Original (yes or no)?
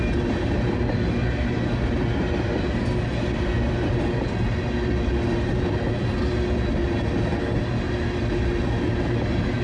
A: yes